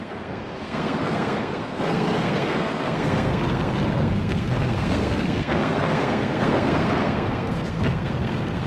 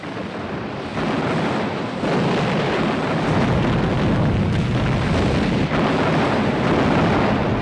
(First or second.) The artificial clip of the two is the first